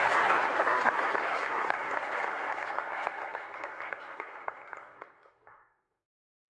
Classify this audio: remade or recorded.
remade